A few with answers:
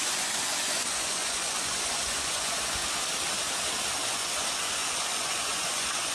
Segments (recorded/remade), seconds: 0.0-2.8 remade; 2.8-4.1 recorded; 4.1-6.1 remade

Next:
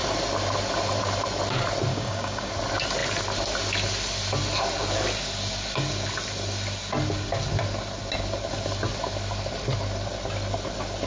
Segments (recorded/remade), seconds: 0.0-1.9 recorded; 1.9-2.5 remade; 2.5-11.1 recorded

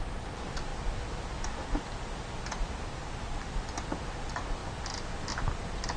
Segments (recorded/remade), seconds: 0.0-6.0 recorded

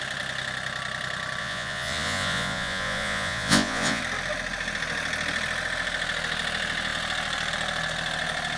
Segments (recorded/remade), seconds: 0.0-1.4 recorded; 1.4-4.0 remade; 4.0-8.6 recorded